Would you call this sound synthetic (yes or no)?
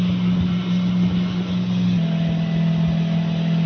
no